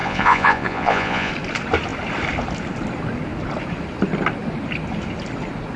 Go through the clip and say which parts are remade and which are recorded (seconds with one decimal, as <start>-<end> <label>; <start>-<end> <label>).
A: 0.0-1.3 remade; 1.3-5.8 recorded